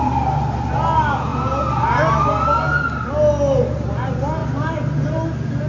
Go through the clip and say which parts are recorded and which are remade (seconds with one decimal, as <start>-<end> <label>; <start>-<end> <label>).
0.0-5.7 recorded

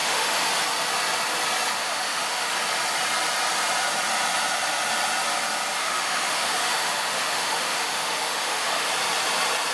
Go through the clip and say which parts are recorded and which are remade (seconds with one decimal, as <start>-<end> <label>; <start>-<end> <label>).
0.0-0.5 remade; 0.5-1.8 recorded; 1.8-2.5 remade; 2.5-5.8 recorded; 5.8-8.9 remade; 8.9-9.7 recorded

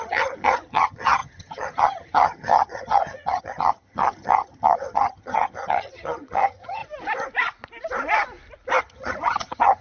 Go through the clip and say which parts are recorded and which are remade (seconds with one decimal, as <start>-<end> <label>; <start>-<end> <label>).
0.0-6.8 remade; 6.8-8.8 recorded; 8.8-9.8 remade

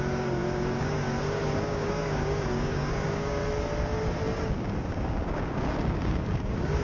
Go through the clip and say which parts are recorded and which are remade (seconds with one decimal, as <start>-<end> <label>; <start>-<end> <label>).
0.0-3.4 remade; 3.4-4.4 recorded; 4.4-6.8 remade

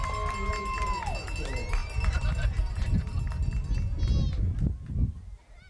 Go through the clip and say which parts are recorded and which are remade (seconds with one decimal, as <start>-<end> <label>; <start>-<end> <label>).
0.0-1.8 recorded; 1.8-2.7 remade; 2.7-5.7 recorded

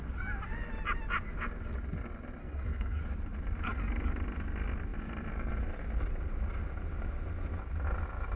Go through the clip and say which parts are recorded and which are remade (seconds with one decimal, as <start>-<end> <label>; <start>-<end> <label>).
0.0-2.4 recorded; 2.4-3.0 remade; 3.0-8.4 recorded

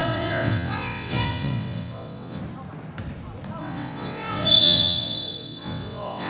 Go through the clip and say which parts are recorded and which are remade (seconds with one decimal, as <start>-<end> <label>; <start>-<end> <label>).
0.0-2.4 remade; 2.4-3.6 recorded; 3.6-6.3 remade